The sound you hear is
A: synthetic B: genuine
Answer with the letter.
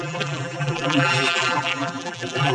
A